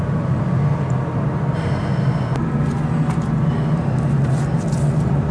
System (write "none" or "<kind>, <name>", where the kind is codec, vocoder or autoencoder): none